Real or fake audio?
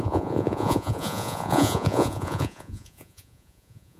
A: fake